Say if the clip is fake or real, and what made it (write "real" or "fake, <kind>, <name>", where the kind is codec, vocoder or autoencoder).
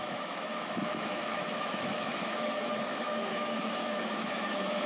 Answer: fake, autoencoder, DAC-VAE